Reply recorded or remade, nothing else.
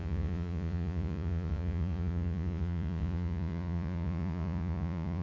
remade